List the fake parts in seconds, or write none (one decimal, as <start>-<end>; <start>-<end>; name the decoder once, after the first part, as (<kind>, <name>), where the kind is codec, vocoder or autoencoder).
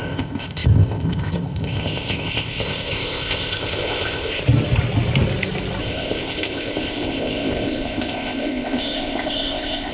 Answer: 0.0-4.4 (codec, ZipCodec); 5.8-9.9